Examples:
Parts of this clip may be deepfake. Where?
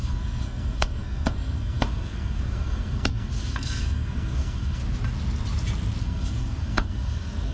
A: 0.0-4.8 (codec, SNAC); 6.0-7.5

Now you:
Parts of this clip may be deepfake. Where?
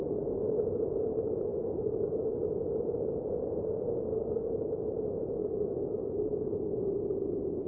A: 1.5-2.2 (codec, DAC); 4.1-4.8; 5.4-7.0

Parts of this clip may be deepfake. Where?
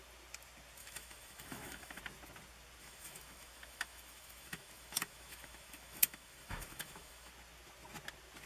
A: 0.8-2.0 (autoencoder, DAC-VAE); 2.8-7.3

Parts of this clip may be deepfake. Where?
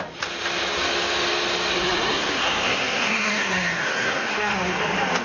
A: 1.7-4.8 (codec, SNAC)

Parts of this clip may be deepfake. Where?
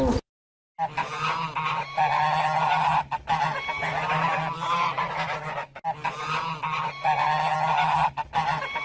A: none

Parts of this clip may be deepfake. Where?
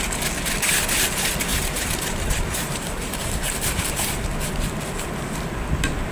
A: 1.5-4.5 (vocoder, BigVGAN v2)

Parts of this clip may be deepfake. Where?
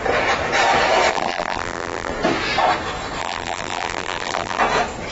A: 1.1-2.1 (vocoder, BigVGAN v2); 3.2-4.6